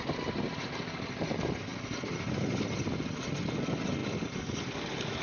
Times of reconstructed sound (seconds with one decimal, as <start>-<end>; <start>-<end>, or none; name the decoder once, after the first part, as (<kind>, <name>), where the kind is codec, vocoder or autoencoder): none